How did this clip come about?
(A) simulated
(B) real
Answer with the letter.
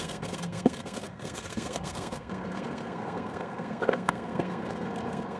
A